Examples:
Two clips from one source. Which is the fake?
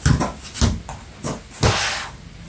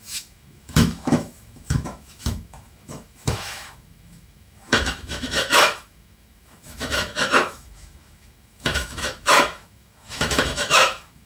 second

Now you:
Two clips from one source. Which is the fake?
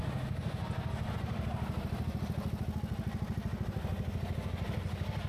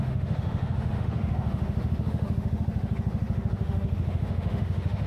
second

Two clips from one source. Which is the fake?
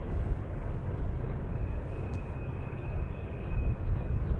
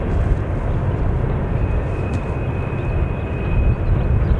first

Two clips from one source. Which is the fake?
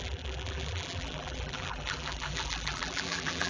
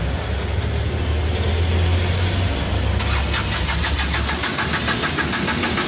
first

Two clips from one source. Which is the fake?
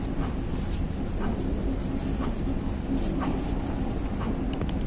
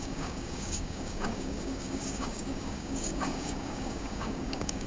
second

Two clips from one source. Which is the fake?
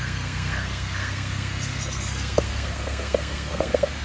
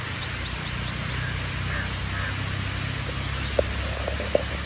first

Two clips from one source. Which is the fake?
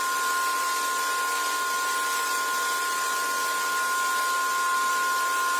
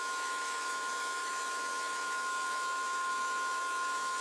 second